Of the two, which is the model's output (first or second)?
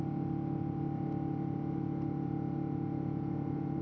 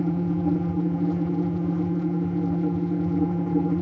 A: second